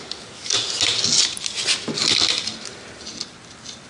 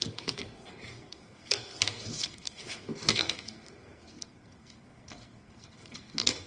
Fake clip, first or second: second